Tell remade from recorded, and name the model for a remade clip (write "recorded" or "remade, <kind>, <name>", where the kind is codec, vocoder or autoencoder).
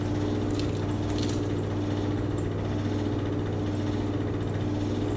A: recorded